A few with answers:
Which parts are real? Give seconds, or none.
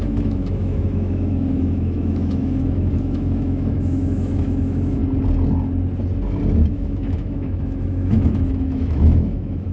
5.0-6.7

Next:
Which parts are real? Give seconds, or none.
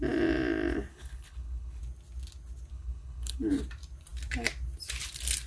0.0-0.9; 1.8-2.7; 3.5-5.5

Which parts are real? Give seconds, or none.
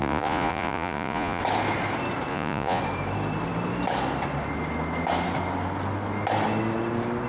1.4-2.3; 2.8-7.3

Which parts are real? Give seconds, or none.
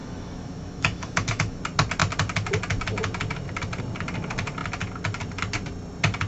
1.6-6.3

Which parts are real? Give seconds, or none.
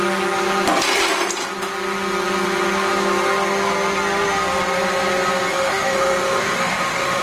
0.0-5.5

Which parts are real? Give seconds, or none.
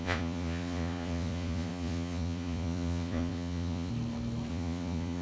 3.9-4.5